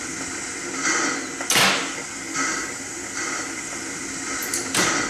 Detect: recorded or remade recorded